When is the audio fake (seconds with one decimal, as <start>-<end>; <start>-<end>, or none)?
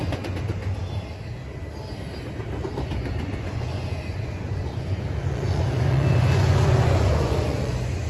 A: 0.0-0.6; 2.6-8.1